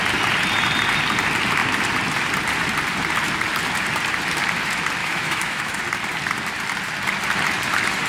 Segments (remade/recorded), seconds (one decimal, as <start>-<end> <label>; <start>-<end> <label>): 0.0-5.0 recorded; 5.0-5.8 remade; 5.8-8.1 recorded

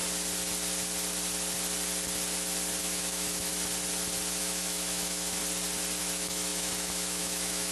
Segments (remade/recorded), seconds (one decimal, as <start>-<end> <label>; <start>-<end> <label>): 0.0-2.8 recorded; 2.8-3.5 remade; 3.5-4.4 recorded; 4.4-5.4 remade; 5.4-6.0 recorded; 6.0-7.7 remade

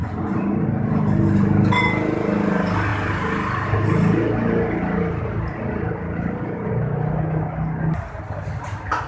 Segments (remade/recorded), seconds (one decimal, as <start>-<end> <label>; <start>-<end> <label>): 0.0-9.1 recorded